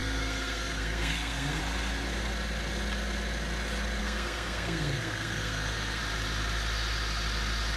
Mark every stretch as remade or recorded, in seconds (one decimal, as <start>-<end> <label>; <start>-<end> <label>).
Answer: 0.0-1.6 remade; 1.6-4.0 recorded; 4.0-6.0 remade; 6.0-7.8 recorded